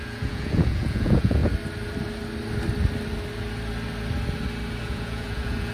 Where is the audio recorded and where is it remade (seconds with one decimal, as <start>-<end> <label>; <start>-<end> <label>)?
0.0-1.4 remade; 1.4-4.8 recorded; 4.8-5.7 remade